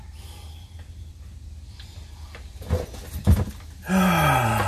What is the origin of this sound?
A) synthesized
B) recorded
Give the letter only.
B